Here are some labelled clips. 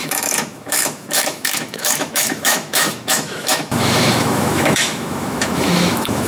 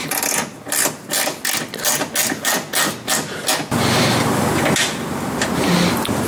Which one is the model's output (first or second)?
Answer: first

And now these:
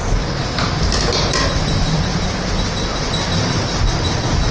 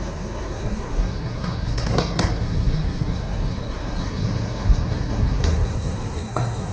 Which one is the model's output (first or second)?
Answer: second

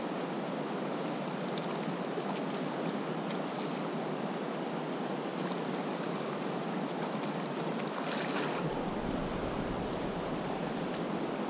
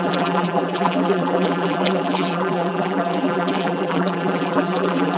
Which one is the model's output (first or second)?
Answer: second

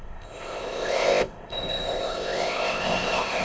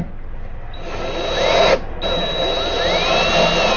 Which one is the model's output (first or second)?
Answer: first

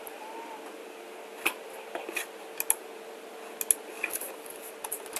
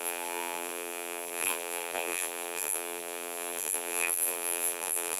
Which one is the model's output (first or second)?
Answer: second